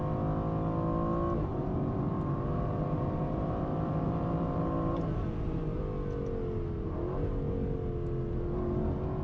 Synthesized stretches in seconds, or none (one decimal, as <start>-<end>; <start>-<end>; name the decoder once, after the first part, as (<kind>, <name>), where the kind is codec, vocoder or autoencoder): 1.5-5.8 (vocoder, BigVGAN v2)